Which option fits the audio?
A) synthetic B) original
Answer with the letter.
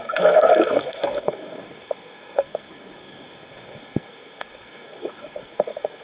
A